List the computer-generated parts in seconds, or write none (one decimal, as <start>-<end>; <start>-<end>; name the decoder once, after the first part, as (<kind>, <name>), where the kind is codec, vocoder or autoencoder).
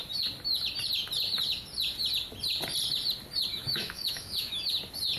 3.5-4.7 (autoencoder, DAC-VAE)